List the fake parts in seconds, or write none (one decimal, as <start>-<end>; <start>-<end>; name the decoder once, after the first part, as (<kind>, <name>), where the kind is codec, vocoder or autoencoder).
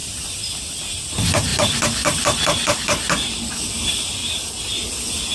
4.2-5.3 (vocoder, BigVGAN v2)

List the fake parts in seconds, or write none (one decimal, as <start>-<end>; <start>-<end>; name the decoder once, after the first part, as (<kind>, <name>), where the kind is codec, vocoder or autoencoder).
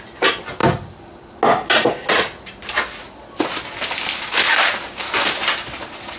none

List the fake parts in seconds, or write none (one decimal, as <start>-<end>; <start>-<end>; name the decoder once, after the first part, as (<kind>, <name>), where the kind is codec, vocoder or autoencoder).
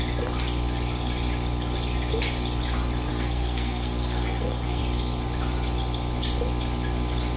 3.1-4.8 (codec, SNAC)